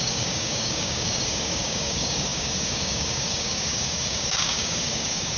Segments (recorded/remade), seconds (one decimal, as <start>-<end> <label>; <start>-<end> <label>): 0.0-5.4 remade